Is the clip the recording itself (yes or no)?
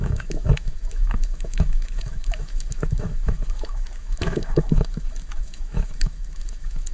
no